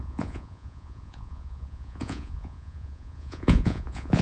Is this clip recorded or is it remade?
remade